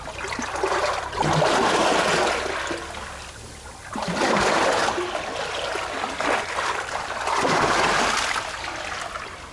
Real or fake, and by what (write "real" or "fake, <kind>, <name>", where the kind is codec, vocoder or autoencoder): real